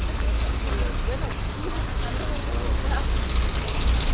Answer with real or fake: real